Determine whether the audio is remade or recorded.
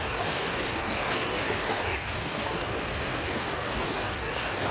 remade